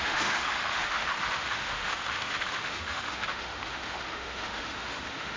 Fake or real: fake